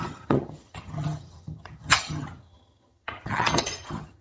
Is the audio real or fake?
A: fake